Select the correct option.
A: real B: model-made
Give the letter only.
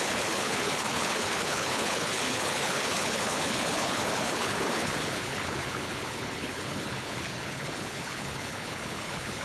B